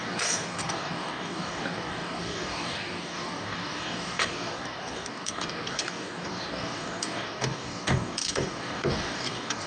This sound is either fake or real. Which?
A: fake